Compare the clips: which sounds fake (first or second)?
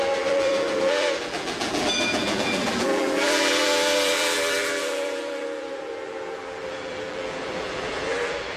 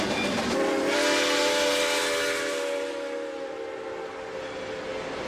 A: first